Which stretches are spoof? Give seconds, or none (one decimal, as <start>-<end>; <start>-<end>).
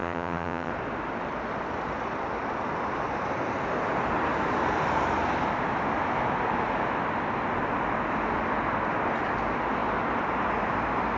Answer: 0.0-0.7